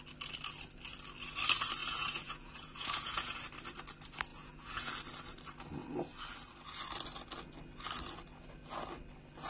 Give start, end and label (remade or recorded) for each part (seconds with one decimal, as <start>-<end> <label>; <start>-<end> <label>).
0.0-1.8 recorded; 1.8-3.4 remade; 3.4-4.3 recorded; 4.3-4.9 remade; 4.9-9.5 recorded